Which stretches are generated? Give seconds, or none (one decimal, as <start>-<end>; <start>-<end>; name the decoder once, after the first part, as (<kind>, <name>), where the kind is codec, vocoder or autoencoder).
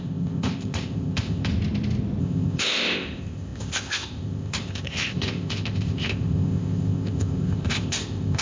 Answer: 0.0-1.5 (codec, ZipCodec); 2.2-8.4